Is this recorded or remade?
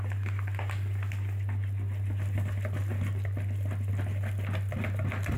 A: recorded